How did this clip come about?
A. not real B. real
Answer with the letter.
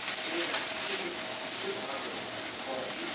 B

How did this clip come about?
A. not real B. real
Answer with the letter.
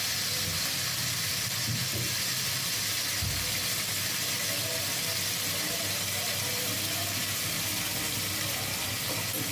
B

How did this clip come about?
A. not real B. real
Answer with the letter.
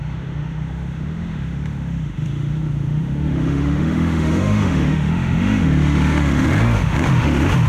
A